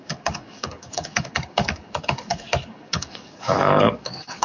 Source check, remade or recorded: remade